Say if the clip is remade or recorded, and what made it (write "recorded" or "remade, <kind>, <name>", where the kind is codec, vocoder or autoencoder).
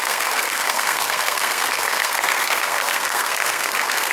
remade, codec, SNAC